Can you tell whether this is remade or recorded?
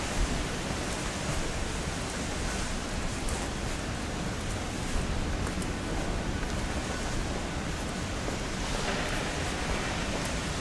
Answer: recorded